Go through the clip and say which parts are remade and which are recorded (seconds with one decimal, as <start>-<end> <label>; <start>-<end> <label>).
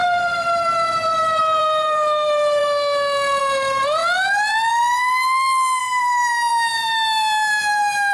0.0-1.4 recorded; 1.4-2.6 remade; 2.6-3.4 recorded; 3.4-4.0 remade; 4.0-5.8 recorded; 5.8-8.1 remade